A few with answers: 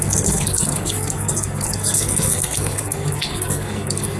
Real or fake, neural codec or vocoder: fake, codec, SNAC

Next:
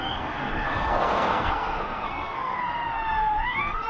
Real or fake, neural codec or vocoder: fake, codec, SNAC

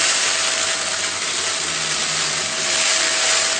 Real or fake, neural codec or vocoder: real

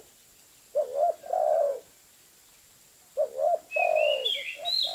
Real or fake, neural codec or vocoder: real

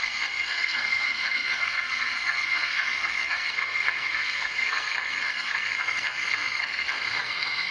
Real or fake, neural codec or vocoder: fake, codec, SNAC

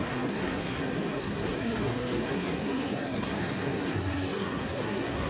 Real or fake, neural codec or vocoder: fake, codec, SNAC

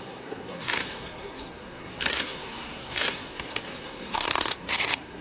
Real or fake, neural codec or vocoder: fake, codec, SNAC